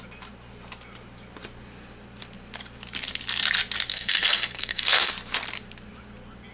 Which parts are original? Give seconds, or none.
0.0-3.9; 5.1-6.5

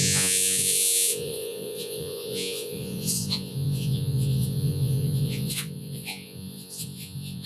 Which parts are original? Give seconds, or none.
none

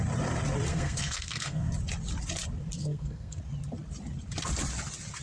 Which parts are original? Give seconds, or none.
0.0-0.7; 1.7-2.8; 3.4-5.2

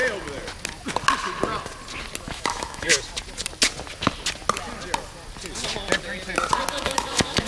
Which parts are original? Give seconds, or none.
0.0-2.2; 2.9-6.7

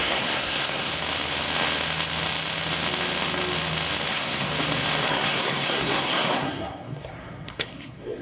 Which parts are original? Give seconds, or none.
0.9-4.1; 4.5-5.1

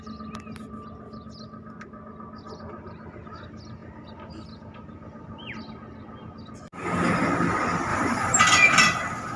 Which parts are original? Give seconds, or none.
0.0-7.9; 8.4-9.4

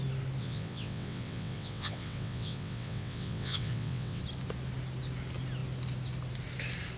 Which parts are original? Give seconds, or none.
0.0-0.4; 4.2-7.0

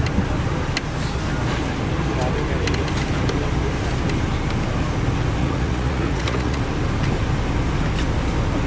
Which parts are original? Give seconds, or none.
0.0-5.4; 6.6-8.7